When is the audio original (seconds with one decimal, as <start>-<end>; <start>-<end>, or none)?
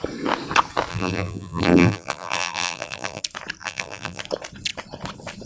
0.0-0.9; 3.2-3.6; 4.2-5.5